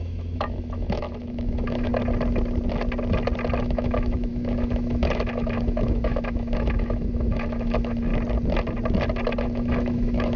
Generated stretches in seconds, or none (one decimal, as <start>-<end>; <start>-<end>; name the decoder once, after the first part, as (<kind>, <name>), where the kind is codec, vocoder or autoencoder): 0.0-1.9 (autoencoder, DAC-VAE); 3.6-8.1; 9.4-10.4